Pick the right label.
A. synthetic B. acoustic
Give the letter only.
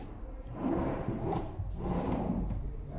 A